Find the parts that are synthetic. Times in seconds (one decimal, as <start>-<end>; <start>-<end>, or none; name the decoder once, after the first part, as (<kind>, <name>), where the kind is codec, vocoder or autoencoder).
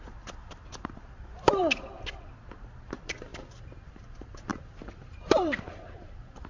0.0-1.6 (vocoder, BigVGAN v2); 2.8-6.5